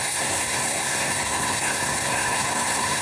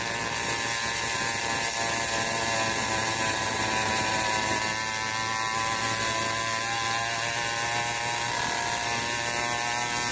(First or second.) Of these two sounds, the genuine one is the second